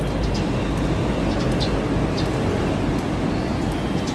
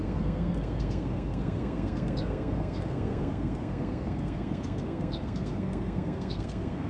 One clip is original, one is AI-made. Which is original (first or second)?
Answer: first